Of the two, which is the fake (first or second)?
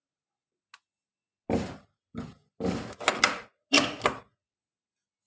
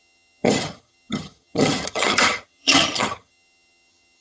second